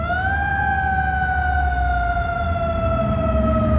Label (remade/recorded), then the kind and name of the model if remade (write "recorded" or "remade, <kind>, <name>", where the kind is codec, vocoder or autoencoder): recorded